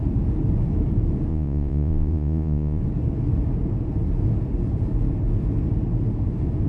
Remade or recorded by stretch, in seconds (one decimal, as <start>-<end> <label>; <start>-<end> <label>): 0.0-1.3 recorded; 1.3-2.8 remade; 2.8-6.7 recorded